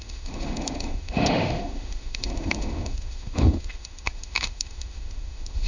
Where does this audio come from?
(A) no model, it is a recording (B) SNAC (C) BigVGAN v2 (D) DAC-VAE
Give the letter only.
D